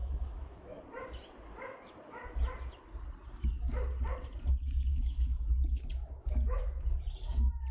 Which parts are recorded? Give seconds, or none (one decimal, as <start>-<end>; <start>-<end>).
0.8-4.9; 6.9-7.7